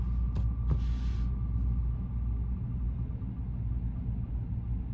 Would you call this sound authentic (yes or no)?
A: yes